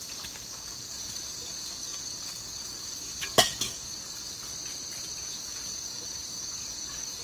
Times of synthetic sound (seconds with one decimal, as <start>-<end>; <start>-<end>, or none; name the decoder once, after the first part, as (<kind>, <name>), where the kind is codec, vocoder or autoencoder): 0.0-4.5 (codec, DAC); 5.2-7.2